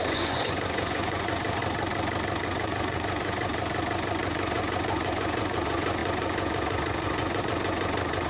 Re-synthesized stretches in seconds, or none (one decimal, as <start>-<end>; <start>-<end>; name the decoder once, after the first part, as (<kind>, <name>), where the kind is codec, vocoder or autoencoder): 0.0-1.6 (vocoder, Vocos); 2.4-3.5; 4.2-8.3

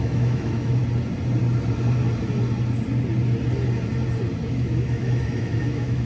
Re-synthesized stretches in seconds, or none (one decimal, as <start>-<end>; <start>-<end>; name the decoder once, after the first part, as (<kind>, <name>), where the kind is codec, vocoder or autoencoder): 0.0-0.8 (autoencoder, DAC-VAE); 4.5-6.1

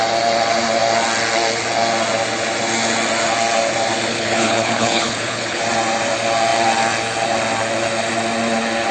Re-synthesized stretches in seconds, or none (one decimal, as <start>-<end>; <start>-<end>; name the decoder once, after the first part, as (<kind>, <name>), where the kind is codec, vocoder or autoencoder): 4.1-5.6 (codec, HILCodec)

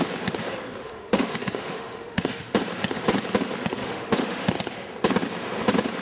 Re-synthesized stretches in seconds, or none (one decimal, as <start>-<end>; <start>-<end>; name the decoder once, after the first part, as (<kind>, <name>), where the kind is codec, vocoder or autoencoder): 0.8-2.6 (autoencoder, DAC-VAE); 3.8-4.5

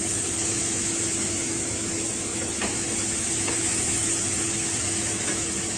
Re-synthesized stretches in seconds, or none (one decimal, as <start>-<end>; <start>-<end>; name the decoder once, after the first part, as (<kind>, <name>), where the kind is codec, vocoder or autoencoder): 0.0-5.8 (autoencoder, DAC-VAE)

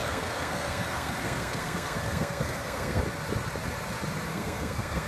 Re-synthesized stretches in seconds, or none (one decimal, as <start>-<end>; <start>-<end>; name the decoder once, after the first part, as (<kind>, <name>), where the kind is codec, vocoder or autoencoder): 0.0-3.0 (codec, SNAC); 4.3-5.1

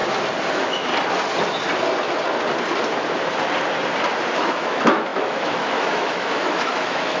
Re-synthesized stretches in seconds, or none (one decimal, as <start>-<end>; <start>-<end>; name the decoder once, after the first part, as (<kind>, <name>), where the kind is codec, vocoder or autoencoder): 0.5-0.9 (autoencoder, DAC-VAE); 4.3-7.2

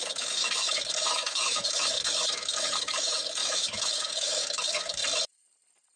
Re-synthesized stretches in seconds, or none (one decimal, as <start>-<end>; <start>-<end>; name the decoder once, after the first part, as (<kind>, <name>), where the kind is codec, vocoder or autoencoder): 0.0-5.0 (autoencoder, DAC-VAE)